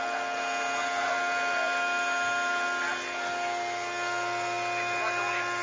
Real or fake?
real